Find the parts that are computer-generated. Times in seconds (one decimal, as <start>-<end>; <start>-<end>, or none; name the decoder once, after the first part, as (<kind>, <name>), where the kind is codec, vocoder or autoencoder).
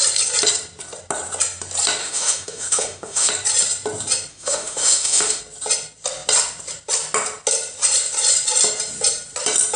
2.0-3.3 (autoencoder, DAC-VAE); 4.3-5.4